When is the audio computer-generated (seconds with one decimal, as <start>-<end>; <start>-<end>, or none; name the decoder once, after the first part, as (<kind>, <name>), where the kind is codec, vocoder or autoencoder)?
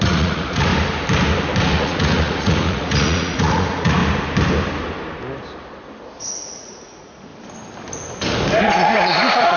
0.0-0.7 (vocoder, Vocos); 1.6-4.0; 6.2-7.3; 8.6-9.6